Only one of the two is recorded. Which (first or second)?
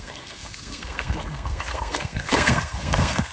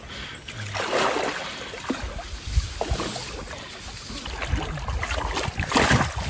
second